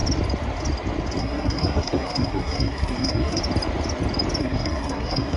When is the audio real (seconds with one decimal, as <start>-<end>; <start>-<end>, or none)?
0.0-1.2; 3.4-4.4